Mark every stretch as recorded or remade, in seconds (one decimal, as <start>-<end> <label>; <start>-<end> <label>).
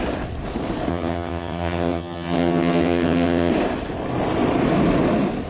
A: 0.0-0.9 recorded; 0.9-3.5 remade; 3.5-5.5 recorded